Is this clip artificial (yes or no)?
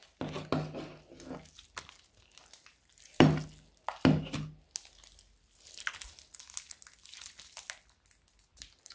no